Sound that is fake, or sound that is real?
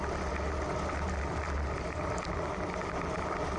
real